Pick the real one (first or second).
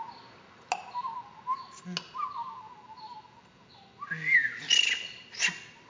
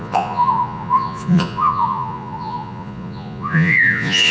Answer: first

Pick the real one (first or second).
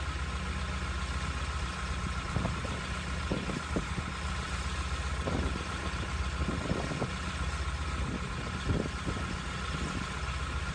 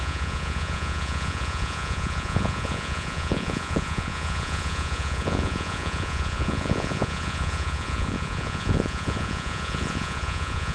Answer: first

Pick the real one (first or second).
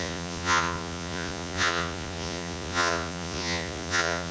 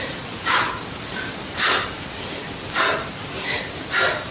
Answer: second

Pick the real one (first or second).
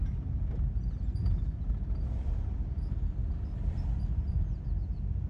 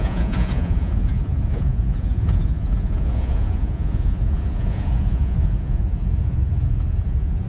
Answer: first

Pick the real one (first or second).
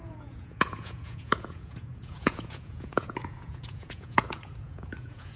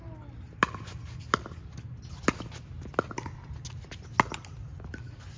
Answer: second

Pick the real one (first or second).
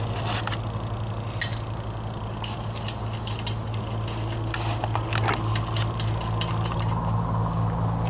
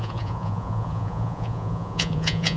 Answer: first